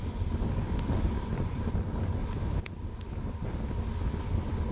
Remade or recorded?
recorded